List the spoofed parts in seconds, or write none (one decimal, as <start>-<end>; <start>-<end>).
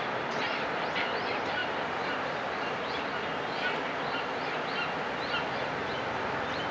1.6-3.0